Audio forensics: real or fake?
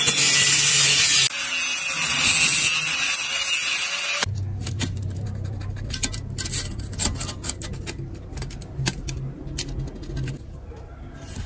real